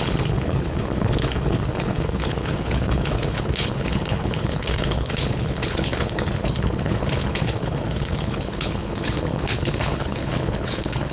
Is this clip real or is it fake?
fake